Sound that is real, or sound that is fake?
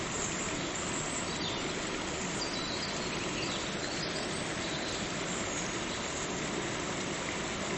real